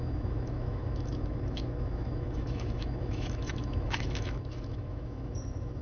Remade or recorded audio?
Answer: remade